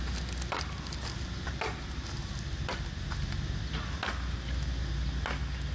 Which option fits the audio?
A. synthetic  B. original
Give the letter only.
B